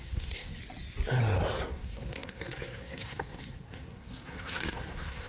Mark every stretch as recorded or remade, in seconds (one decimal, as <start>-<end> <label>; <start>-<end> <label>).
0.0-0.6 remade; 0.6-1.7 recorded; 1.7-5.3 remade